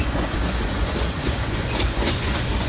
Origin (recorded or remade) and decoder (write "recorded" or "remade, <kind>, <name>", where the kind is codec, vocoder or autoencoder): remade, vocoder, Vocos